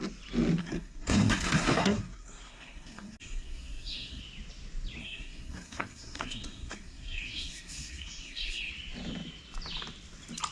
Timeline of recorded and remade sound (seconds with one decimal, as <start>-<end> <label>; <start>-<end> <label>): 0.0-0.6 recorded; 0.6-4.2 remade; 4.2-5.0 recorded; 5.0-8.7 remade; 8.7-10.5 recorded